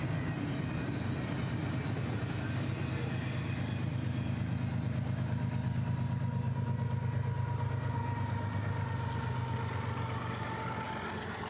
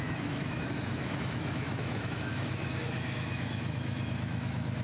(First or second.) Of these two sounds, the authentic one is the first